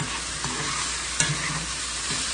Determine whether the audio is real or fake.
real